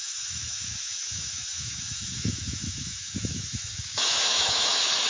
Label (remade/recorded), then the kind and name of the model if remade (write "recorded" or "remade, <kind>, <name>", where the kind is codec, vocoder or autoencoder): remade, autoencoder, DAC-VAE